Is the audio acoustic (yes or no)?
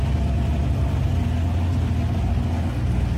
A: yes